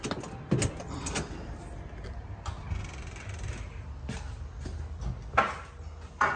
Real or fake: real